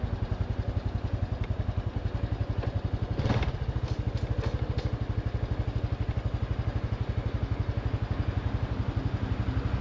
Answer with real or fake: real